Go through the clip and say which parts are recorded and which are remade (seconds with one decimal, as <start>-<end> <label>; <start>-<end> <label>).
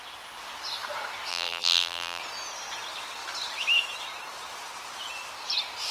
0.0-1.3 recorded; 1.3-2.2 remade; 2.2-5.9 recorded